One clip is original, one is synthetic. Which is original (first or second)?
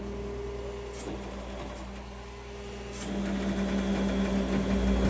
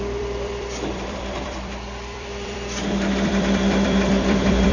first